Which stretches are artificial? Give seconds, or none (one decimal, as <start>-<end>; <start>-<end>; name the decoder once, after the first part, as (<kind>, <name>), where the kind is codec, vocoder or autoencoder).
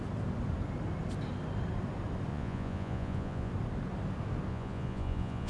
2.3-3.5 (vocoder, Vocos); 4.5-5.5